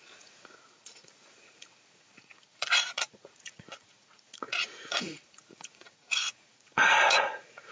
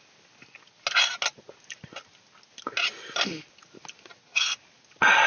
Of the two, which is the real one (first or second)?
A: second